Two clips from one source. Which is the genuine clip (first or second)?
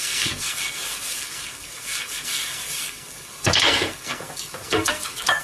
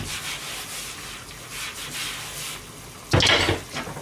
second